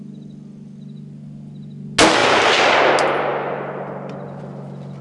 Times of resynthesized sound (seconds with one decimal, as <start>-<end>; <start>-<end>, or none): none